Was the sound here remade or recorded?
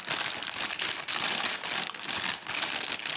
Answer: recorded